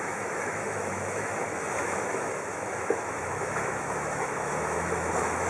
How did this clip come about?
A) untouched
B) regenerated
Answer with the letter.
B